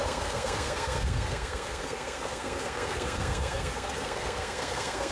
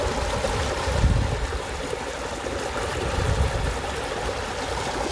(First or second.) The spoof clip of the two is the first